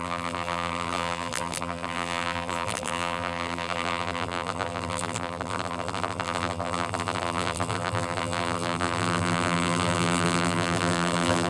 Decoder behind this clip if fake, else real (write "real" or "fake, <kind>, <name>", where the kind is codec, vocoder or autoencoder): fake, vocoder, BigVGAN v2